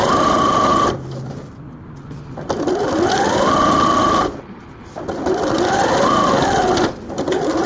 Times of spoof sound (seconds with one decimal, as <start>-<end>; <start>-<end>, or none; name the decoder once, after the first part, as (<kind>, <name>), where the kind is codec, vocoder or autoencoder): none